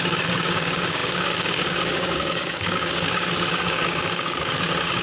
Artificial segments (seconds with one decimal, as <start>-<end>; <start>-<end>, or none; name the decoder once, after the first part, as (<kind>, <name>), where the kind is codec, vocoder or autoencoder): 0.0-5.0 (codec, DAC)